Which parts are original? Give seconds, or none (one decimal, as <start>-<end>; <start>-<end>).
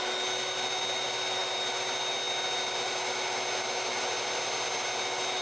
0.0-5.4